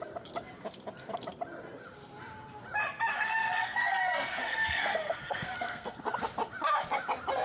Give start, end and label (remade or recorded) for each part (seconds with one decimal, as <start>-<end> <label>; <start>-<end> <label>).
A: 0.0-3.1 recorded; 3.1-6.0 remade; 6.0-7.4 recorded